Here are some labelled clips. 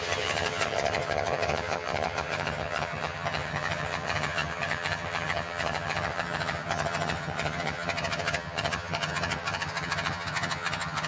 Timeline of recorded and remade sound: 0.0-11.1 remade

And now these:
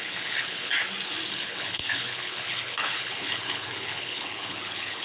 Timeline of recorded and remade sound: 0.0-0.7 remade; 0.7-1.3 recorded; 1.3-5.0 remade

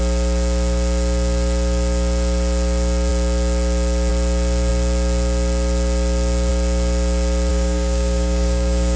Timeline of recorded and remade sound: 0.0-7.5 recorded; 7.5-9.0 remade